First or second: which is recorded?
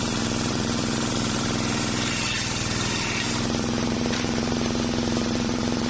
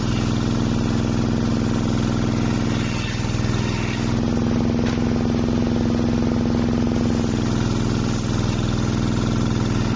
second